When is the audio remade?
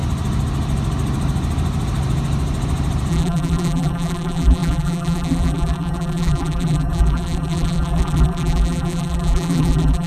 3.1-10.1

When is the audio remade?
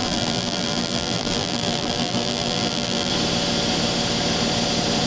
0.0-3.1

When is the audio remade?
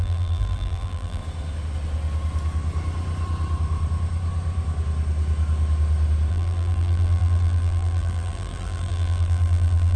0.0-1.2; 6.3-10.0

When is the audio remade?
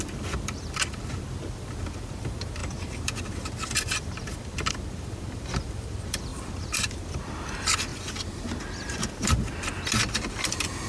0.0-7.9